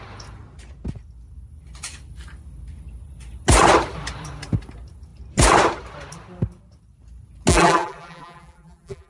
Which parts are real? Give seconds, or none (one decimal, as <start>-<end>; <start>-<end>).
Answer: 0.0-7.5